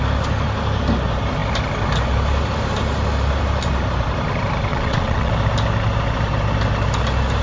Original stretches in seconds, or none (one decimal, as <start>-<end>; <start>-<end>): 0.0-4.7; 5.3-7.4